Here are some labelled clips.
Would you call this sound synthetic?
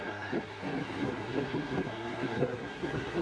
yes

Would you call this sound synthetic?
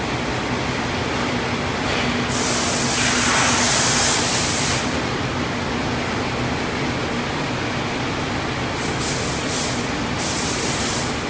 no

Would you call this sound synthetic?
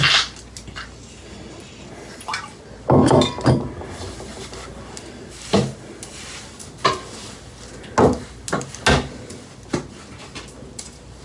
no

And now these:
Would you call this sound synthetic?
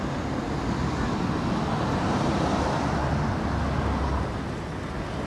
no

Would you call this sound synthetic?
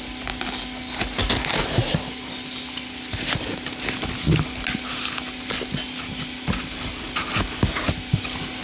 no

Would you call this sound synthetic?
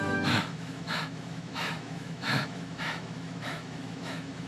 yes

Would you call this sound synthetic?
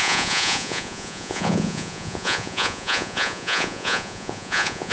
yes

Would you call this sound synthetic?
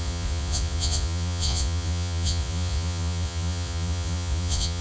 yes